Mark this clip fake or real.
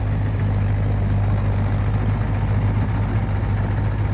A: real